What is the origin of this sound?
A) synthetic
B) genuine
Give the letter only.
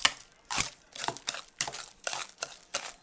A